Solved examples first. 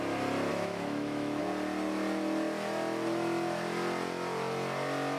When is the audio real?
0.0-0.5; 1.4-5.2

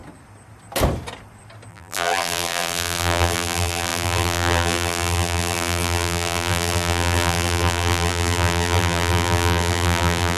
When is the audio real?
0.0-1.7

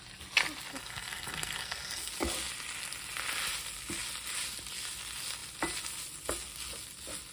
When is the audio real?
0.0-0.7; 2.1-7.3

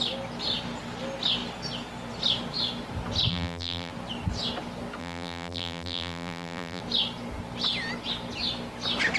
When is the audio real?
0.0-3.3; 3.9-5.0; 6.8-9.2

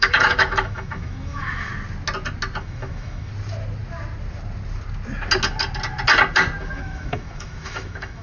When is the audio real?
1.7-2.6; 3.3-6.6

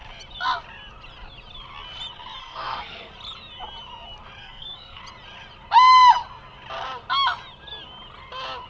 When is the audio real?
0.0-2.4; 3.1-4.4; 5.0-8.7

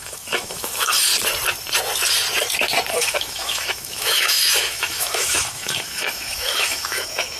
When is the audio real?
1.1-2.9